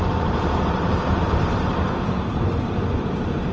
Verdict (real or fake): fake